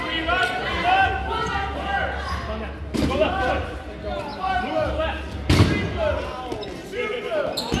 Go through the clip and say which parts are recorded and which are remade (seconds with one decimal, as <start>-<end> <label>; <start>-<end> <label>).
0.0-4.3 recorded; 4.3-4.9 remade; 4.9-7.8 recorded